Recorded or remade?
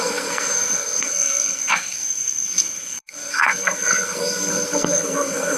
remade